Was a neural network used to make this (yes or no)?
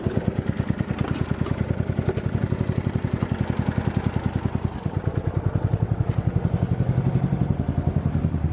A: yes